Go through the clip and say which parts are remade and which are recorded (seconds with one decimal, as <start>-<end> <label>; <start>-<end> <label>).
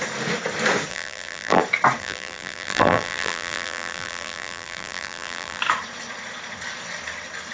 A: 0.0-0.9 recorded; 0.9-1.6 remade; 1.6-2.0 recorded; 2.0-5.6 remade; 5.6-7.5 recorded